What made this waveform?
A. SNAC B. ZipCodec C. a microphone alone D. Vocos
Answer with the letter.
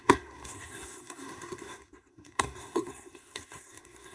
A